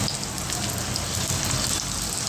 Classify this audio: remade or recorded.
recorded